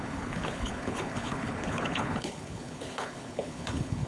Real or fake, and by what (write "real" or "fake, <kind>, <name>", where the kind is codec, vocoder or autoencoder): fake, codec, HILCodec